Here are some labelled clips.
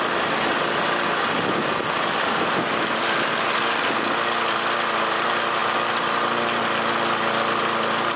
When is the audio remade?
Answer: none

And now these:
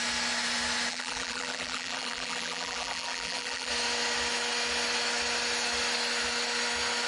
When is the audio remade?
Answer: 0.9-3.7

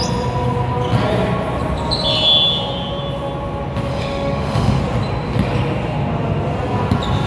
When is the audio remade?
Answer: 3.9-4.8